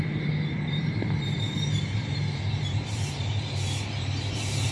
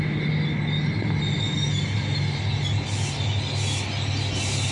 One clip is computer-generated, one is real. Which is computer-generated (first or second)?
first